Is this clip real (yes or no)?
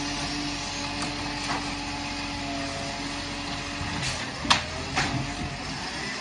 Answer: yes